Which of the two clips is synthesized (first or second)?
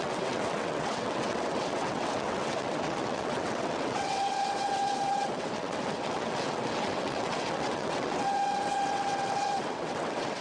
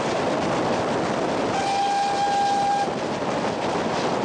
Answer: first